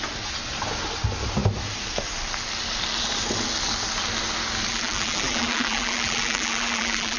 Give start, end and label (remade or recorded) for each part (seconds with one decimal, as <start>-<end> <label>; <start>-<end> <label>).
0.0-4.7 recorded; 4.7-7.2 remade